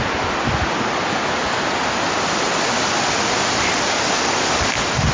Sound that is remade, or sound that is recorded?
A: recorded